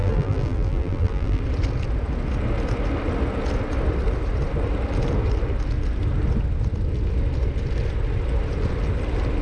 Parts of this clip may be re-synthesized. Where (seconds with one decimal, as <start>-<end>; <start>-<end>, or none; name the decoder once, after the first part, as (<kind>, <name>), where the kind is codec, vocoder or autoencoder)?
0.0-1.4 (vocoder, BigVGAN v2)